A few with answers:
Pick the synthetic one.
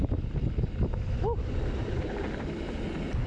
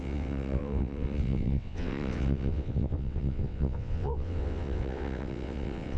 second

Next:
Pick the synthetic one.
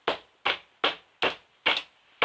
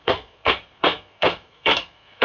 second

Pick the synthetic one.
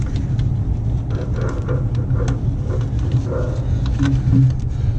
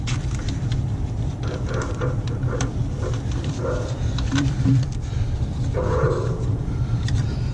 second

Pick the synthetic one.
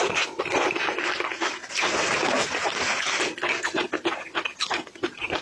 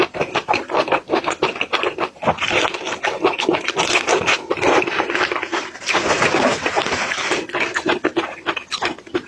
second